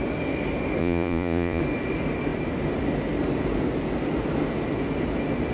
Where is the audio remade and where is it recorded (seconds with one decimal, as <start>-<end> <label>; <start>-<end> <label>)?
0.0-0.8 recorded; 0.8-1.6 remade; 1.6-5.5 recorded

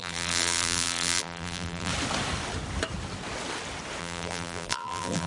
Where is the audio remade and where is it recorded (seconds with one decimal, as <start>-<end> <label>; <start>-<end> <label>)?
0.0-1.9 remade; 1.9-4.0 recorded; 4.0-5.3 remade

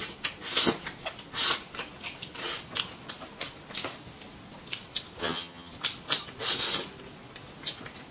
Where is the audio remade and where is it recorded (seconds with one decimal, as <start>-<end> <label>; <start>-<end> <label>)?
0.0-5.2 recorded; 5.2-5.7 remade; 5.7-8.1 recorded

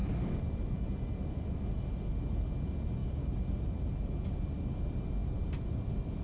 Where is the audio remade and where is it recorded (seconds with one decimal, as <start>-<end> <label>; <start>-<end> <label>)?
0.0-1.8 remade; 1.8-3.0 recorded; 3.0-4.1 remade; 4.1-5.2 recorded; 5.2-6.2 remade

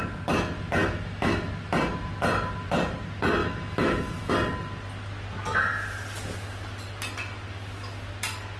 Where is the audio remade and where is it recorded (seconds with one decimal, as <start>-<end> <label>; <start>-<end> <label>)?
0.0-0.8 recorded; 0.8-1.5 remade; 1.5-3.4 recorded; 3.4-4.3 remade; 4.3-8.6 recorded

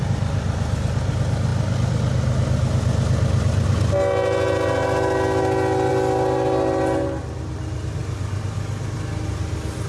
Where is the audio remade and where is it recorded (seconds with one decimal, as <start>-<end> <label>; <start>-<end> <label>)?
0.0-9.9 recorded

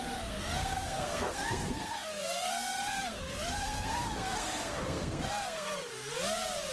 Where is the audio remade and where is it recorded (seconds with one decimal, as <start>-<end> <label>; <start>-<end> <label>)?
0.0-5.9 remade; 5.9-6.7 recorded